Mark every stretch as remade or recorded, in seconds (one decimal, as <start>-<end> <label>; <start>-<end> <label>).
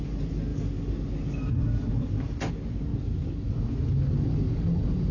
0.0-5.1 recorded